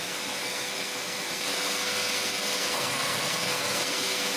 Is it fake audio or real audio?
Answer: fake